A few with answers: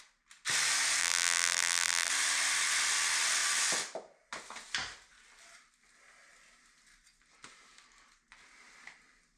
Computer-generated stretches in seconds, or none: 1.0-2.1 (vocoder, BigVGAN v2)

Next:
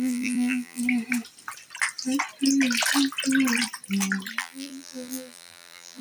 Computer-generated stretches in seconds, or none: 0.0-0.8 (vocoder, BigVGAN v2); 4.4-6.0

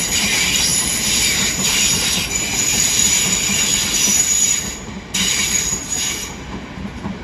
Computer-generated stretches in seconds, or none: 0.0-7.2 (vocoder, BigVGAN v2)

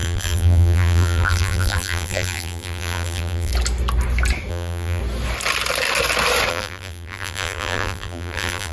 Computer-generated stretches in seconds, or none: 0.0-3.5 (vocoder, BigVGAN v2); 4.5-5.0; 6.5-8.7

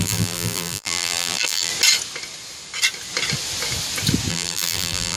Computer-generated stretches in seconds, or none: 0.0-1.7 (vocoder, BigVGAN v2); 4.3-5.2